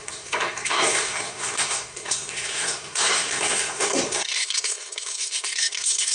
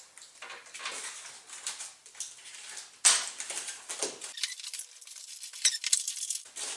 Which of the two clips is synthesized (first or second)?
first